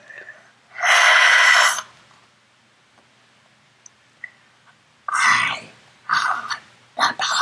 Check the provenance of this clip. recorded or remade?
recorded